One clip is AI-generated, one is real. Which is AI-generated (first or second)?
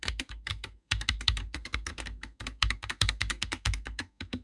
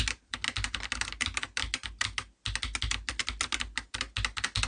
first